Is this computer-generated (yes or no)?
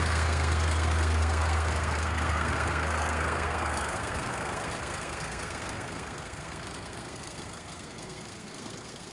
yes